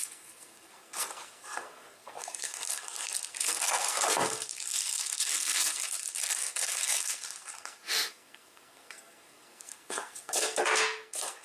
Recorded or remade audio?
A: remade